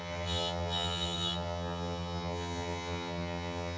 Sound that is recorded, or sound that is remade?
remade